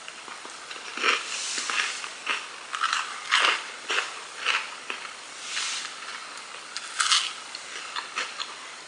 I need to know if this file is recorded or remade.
recorded